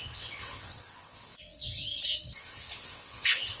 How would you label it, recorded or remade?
remade